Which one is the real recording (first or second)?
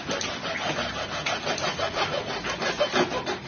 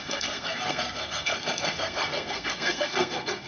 first